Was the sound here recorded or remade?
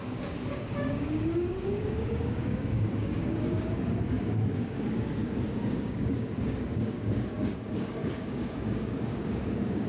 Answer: remade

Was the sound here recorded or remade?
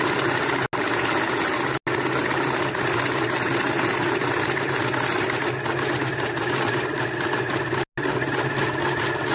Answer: recorded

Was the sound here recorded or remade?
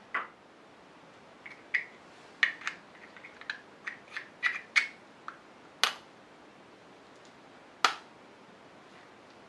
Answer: recorded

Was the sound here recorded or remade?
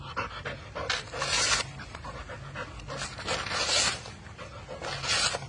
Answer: recorded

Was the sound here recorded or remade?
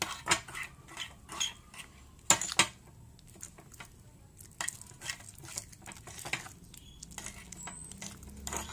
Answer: recorded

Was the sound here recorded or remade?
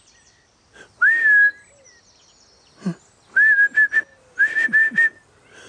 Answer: recorded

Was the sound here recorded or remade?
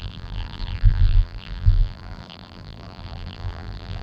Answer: remade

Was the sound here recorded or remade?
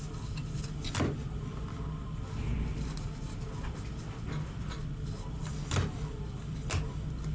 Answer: recorded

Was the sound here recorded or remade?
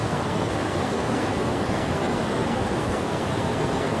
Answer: remade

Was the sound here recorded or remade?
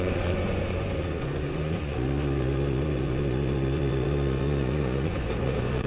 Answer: remade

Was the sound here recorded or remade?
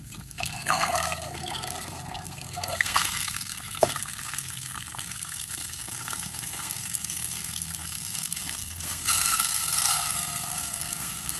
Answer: remade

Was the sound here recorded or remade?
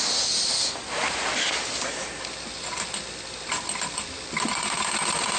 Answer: recorded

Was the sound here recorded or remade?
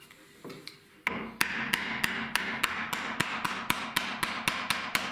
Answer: recorded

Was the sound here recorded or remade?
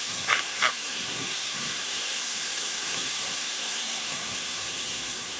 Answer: remade